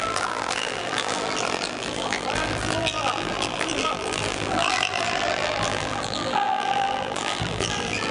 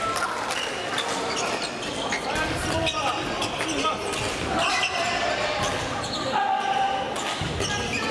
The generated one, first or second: first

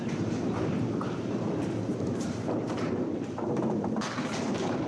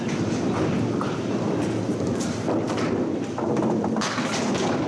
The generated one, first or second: first